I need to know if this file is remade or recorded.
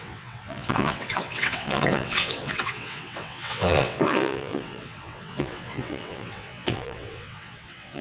remade